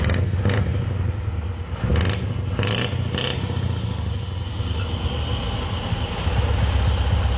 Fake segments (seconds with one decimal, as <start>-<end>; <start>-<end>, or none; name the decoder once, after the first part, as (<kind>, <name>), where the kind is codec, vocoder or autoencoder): none